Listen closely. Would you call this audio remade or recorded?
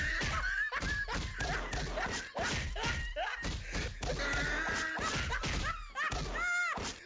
recorded